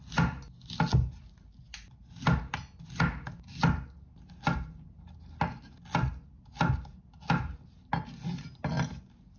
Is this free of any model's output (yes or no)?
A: yes